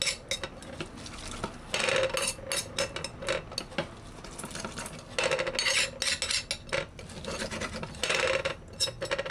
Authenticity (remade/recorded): recorded